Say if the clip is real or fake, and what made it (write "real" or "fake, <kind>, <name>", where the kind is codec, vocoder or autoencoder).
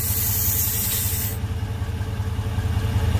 real